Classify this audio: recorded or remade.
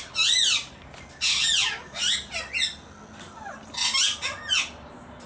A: recorded